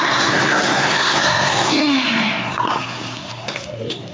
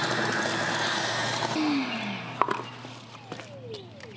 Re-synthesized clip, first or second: first